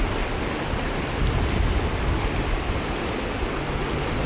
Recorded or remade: recorded